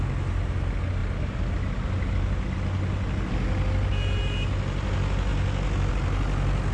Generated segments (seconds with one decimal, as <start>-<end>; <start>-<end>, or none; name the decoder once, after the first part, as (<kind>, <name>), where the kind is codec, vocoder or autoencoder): none